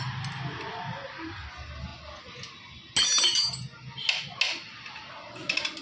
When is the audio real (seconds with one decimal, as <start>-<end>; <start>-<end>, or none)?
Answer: 0.0-5.8